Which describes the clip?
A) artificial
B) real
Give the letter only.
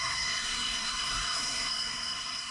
A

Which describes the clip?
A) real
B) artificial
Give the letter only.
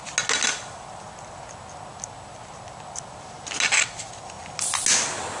A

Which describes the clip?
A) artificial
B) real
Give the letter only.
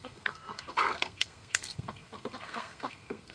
A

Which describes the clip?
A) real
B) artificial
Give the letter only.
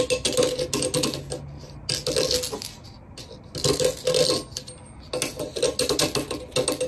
A